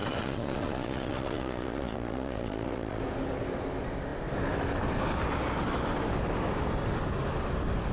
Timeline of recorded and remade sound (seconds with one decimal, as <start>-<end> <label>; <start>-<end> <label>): 0.0-3.0 remade; 3.0-7.9 recorded